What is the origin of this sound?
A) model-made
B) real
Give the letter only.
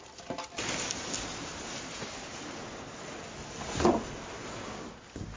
B